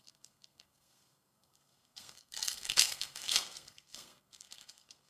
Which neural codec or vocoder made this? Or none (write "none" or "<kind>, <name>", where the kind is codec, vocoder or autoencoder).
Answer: codec, SNAC